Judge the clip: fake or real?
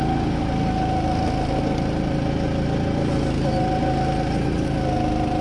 real